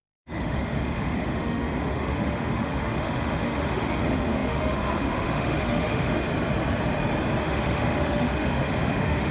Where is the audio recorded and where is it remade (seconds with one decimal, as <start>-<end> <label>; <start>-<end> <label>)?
0.0-6.3 remade; 6.3-7.4 recorded; 7.4-9.3 remade